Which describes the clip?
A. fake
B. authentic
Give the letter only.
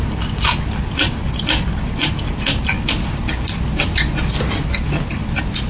B